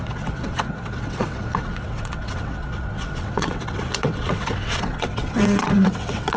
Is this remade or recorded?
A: remade